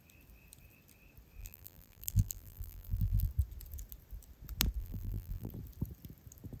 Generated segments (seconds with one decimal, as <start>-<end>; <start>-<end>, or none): 1.4-3.3; 4.8-5.5